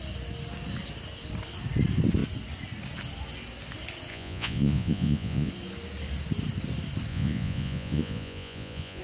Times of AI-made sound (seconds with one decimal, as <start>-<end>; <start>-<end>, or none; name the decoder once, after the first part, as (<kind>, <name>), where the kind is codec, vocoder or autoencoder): 4.1-5.5 (vocoder, Vocos); 7.1-9.0